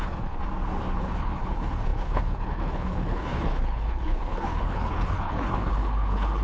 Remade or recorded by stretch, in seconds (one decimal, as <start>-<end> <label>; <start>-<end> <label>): 0.0-0.4 remade; 0.4-1.0 recorded; 1.0-6.4 remade